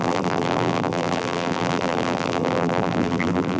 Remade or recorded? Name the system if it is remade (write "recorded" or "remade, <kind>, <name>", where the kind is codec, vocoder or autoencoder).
remade, vocoder, BigVGAN v2